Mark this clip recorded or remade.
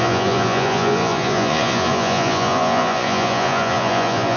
remade